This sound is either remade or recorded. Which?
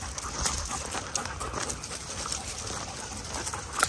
recorded